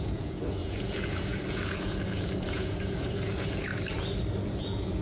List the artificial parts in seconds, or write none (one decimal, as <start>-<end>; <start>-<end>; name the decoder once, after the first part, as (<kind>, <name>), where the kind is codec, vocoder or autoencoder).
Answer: 0.0-3.7 (vocoder, Vocos); 4.6-5.0